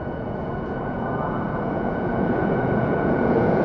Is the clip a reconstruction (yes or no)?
yes